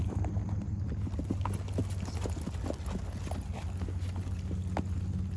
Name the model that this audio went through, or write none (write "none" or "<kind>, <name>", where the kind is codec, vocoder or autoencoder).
none